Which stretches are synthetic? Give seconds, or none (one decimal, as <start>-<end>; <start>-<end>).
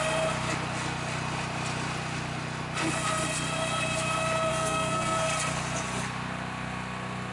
4.5-5.2